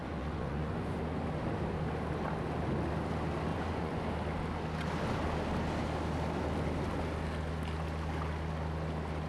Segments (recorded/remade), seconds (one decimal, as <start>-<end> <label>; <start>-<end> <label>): 0.0-1.0 remade; 1.0-3.5 recorded; 3.5-4.0 remade; 4.0-9.3 recorded

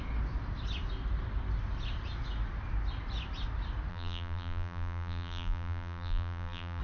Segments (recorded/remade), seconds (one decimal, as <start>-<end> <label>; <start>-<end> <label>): 0.0-3.9 recorded; 3.9-6.8 remade

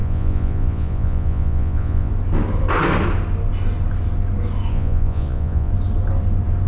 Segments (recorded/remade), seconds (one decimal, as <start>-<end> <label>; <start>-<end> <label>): 0.0-2.1 remade; 2.1-4.7 recorded; 4.7-5.7 remade; 5.7-6.7 recorded

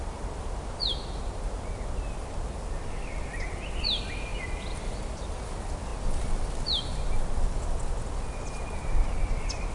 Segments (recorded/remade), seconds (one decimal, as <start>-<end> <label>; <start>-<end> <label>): 0.0-4.3 recorded; 4.3-5.4 remade; 5.4-9.7 recorded

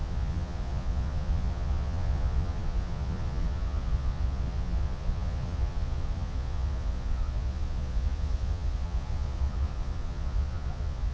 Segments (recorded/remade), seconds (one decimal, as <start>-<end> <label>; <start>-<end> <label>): 0.0-11.1 remade

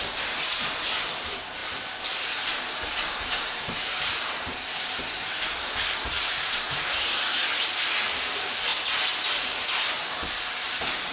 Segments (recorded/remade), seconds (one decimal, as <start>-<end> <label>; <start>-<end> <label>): 0.0-7.4 remade; 7.4-8.1 recorded; 8.1-8.7 remade; 8.7-10.3 recorded; 10.3-11.1 remade

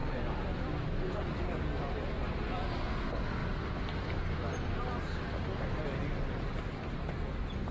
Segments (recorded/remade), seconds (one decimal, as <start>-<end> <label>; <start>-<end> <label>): 0.0-7.7 recorded